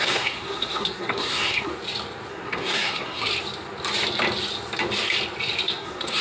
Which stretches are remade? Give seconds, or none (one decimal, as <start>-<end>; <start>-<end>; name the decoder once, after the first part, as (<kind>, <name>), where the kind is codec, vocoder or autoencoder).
0.0-1.7 (codec, SNAC); 2.3-3.3; 5.7-6.2